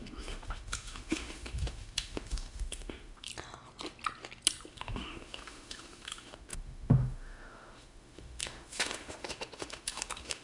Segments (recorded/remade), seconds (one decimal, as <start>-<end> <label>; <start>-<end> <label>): 0.0-3.3 remade; 3.3-4.7 recorded; 4.7-10.4 remade